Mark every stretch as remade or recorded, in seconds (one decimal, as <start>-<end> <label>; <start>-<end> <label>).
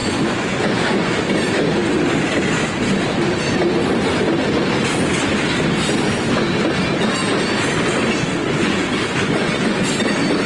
0.0-1.2 remade; 1.2-8.4 recorded; 8.4-9.8 remade; 9.8-10.5 recorded